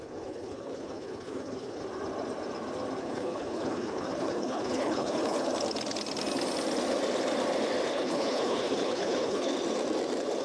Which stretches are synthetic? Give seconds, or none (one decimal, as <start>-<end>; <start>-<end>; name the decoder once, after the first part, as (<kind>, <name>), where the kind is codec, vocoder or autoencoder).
0.0-1.8 (codec, HILCodec); 3.0-5.5; 7.9-9.5

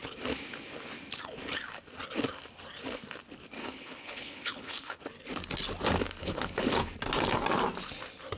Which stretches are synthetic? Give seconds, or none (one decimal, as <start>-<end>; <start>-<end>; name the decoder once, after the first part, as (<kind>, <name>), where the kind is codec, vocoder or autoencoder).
3.6-5.0 (codec, HILCodec); 6.2-6.9

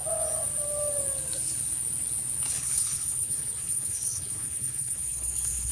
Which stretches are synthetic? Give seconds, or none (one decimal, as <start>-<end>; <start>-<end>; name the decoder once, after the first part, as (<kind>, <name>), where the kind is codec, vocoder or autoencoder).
2.5-5.7 (codec, HILCodec)